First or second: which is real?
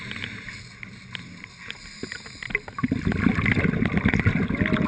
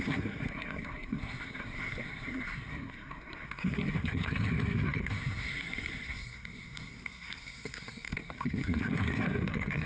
first